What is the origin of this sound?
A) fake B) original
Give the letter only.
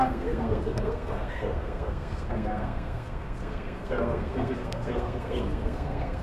A